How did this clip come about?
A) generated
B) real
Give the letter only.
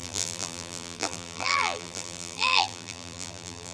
A